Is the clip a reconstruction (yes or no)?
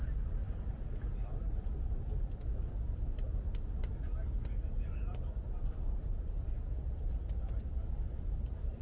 yes